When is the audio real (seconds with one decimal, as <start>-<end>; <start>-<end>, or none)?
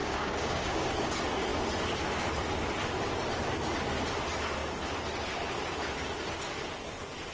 0.8-7.3